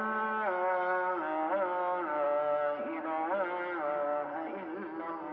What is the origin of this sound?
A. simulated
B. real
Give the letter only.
B